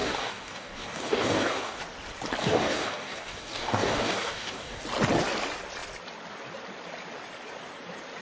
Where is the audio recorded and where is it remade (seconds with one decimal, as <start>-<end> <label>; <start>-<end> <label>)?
0.0-1.8 remade; 1.8-2.4 recorded; 2.4-4.8 remade; 4.8-8.2 recorded

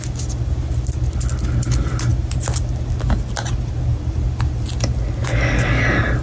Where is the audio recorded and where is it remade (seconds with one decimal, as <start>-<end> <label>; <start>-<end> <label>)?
0.0-5.2 recorded; 5.2-5.8 remade; 5.8-6.2 recorded

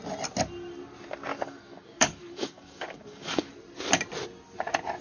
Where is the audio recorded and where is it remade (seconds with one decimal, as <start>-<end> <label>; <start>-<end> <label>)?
0.0-1.3 recorded; 1.3-3.5 remade; 3.5-5.0 recorded

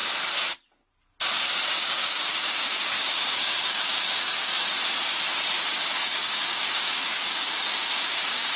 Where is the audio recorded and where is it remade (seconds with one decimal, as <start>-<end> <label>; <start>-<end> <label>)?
0.0-1.8 recorded; 1.8-4.5 remade; 4.5-5.6 recorded; 5.6-8.6 remade

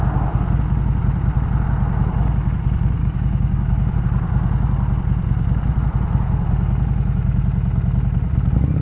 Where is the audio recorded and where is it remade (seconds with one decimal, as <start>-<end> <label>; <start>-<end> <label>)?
0.0-3.0 recorded; 3.0-4.0 remade; 4.0-8.8 recorded

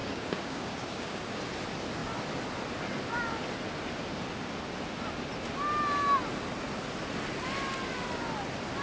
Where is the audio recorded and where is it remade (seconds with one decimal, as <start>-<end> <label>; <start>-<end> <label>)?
0.0-1.4 remade; 1.4-8.8 recorded

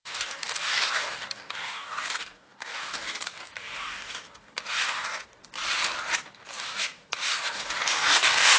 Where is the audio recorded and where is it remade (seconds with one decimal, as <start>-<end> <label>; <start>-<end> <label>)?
0.0-5.4 remade; 5.4-6.3 recorded; 6.3-8.6 remade

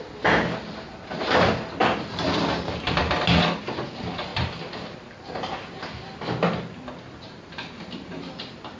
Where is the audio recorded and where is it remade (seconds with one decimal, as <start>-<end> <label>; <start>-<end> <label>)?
0.0-8.8 recorded